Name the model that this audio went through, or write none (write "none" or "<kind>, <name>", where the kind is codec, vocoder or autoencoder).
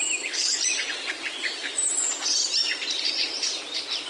vocoder, BigVGAN v2